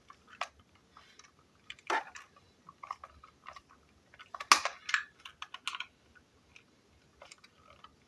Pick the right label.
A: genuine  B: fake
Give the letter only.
A